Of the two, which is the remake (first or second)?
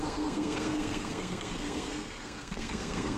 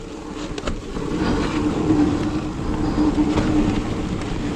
first